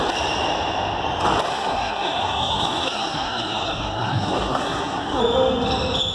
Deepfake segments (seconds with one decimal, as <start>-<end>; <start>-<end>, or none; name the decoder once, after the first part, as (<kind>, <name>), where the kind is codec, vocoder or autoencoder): 1.5-5.2 (codec, SNAC)